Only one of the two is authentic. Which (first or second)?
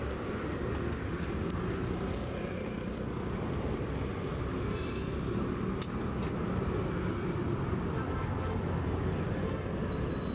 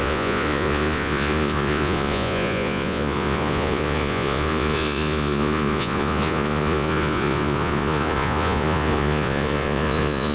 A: first